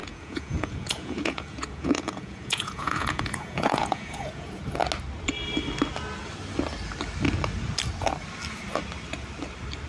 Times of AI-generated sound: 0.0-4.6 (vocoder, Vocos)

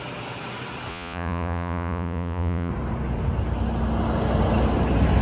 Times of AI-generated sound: 0.9-2.7 (vocoder, Vocos)

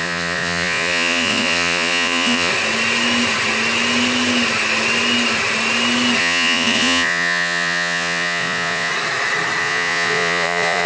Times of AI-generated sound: 0.0-2.5 (vocoder, Vocos); 6.2-8.9; 9.6-10.9

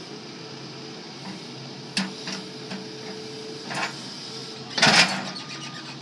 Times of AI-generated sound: none

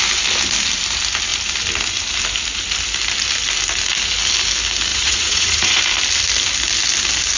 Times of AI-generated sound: 4.9-5.8 (vocoder, Vocos)

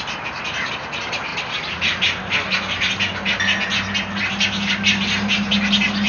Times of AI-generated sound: none